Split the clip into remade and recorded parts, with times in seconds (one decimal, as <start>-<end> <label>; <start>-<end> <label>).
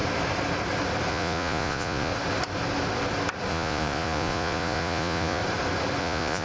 0.0-1.1 recorded; 1.1-2.1 remade; 2.1-3.5 recorded; 3.5-5.4 remade; 5.4-6.0 recorded; 6.0-6.4 remade